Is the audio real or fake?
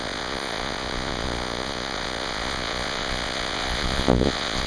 fake